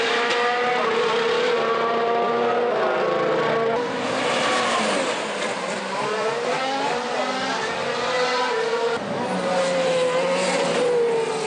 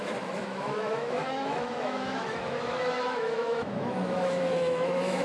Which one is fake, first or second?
second